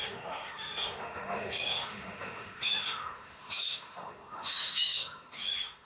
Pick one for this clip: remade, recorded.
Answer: remade